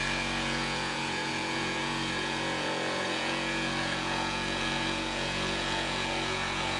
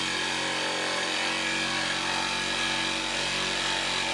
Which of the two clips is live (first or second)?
second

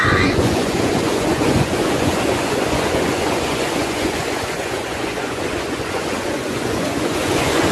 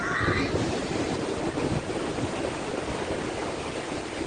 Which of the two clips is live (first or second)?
second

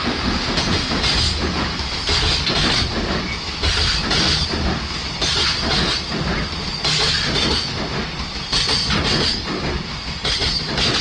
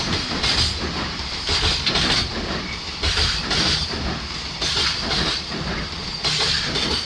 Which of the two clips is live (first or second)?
first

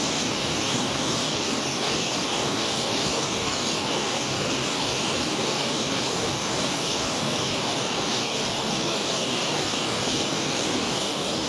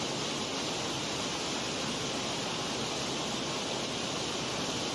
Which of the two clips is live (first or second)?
second